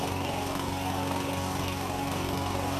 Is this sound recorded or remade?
remade